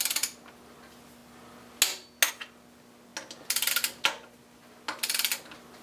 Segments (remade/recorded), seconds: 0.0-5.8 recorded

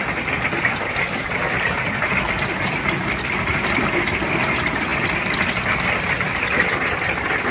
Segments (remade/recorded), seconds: 0.0-7.5 recorded

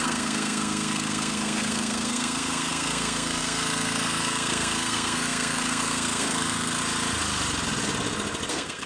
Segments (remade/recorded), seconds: 0.0-6.8 remade; 6.8-8.5 recorded; 8.5-8.9 remade

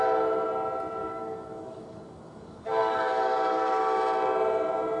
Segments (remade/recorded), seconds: 0.0-1.0 recorded; 1.0-4.0 remade; 4.0-5.0 recorded

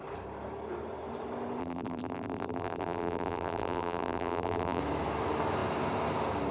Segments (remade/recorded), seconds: 0.0-1.6 recorded; 1.6-4.8 remade; 4.8-6.5 recorded

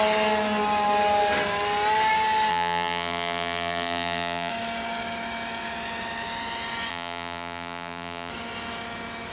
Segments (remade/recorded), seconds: 0.0-2.5 recorded; 2.5-4.5 remade; 4.5-6.9 recorded; 6.9-8.3 remade; 8.3-9.3 recorded

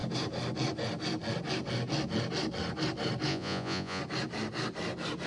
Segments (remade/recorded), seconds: 0.0-3.3 recorded; 3.3-4.0 remade; 4.0-5.3 recorded